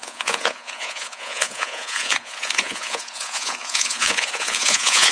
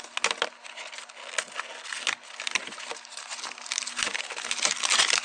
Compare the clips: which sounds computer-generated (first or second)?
first